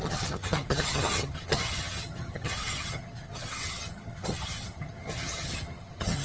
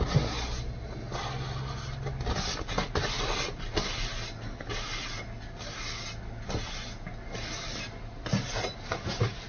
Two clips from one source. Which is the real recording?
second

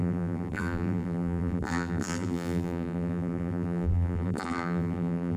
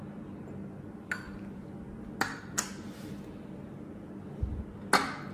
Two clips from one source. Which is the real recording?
second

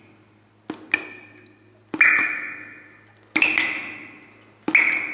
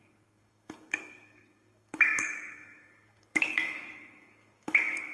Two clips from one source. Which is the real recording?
first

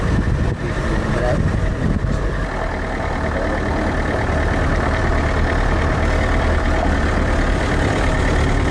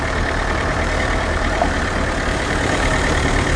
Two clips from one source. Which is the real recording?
first